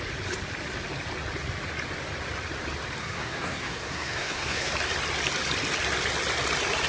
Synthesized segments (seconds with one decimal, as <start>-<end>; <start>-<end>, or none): 3.0-4.7